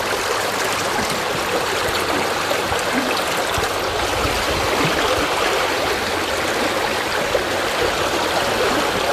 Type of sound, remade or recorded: recorded